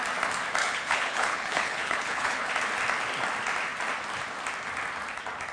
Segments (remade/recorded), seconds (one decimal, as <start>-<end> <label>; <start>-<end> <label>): 0.0-0.6 recorded; 0.6-2.5 remade; 2.5-5.5 recorded